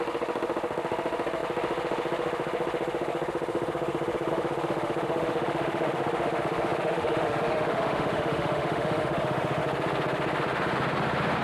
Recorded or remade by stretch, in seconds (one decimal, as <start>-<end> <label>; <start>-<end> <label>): 0.0-9.6 remade; 9.6-11.4 recorded